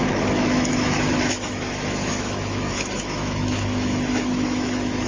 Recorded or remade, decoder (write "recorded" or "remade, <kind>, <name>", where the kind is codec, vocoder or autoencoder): remade, autoencoder, DAC-VAE